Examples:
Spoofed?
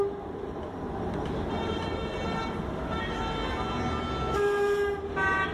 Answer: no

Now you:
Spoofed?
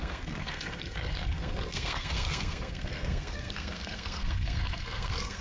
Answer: yes